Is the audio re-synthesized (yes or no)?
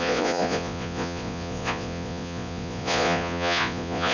yes